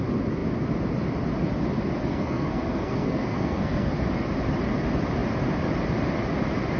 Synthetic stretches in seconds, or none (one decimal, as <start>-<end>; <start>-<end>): 2.1-3.9